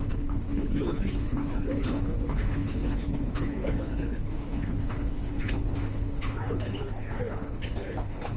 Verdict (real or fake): fake